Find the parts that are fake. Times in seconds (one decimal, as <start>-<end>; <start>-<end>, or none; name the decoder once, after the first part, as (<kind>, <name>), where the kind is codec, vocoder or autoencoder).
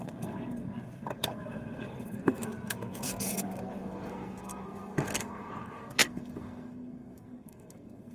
0.0-8.1 (codec, SNAC)